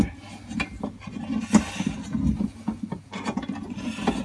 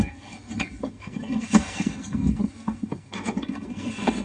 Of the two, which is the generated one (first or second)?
second